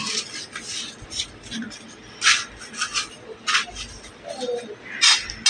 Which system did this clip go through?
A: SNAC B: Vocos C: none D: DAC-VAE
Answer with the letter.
C